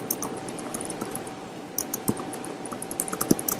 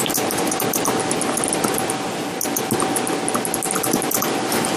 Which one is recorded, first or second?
second